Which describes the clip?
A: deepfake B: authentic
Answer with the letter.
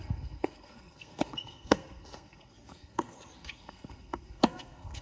A